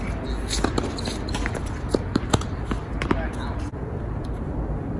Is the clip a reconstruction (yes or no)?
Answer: no